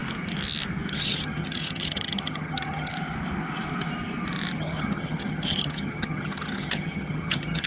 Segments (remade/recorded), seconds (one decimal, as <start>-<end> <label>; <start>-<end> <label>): 0.0-0.9 recorded; 0.9-2.9 remade; 2.9-4.6 recorded; 4.6-7.7 remade